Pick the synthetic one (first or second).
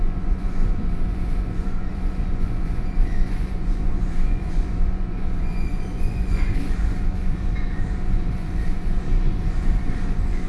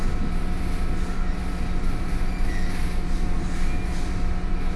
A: first